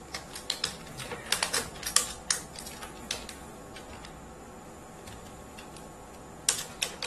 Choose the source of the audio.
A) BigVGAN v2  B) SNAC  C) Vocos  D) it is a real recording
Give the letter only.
D